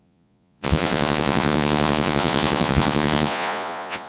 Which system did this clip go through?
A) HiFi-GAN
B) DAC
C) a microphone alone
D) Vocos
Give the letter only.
D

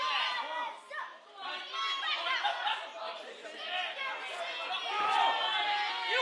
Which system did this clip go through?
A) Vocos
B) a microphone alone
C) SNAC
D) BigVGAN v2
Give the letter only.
B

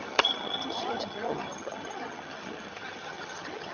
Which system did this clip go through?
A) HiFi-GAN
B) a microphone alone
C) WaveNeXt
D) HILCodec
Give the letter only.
A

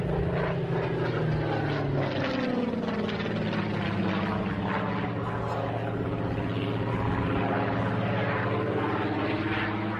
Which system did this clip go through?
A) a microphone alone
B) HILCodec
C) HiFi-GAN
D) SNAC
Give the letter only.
A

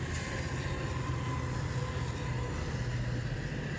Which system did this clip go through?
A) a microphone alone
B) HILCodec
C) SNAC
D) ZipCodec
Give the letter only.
A